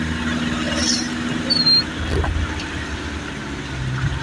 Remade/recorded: recorded